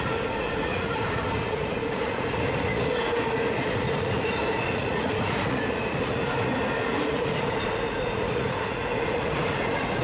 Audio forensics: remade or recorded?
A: remade